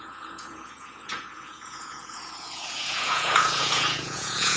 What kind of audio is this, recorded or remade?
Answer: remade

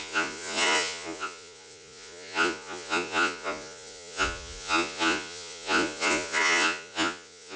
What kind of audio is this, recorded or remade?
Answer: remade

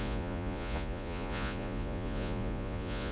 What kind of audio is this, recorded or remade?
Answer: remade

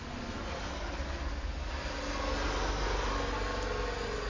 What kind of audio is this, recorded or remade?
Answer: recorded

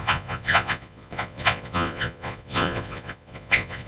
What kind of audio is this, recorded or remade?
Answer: remade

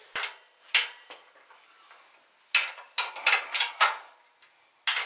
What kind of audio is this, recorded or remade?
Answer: recorded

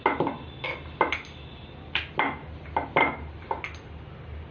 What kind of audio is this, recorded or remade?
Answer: recorded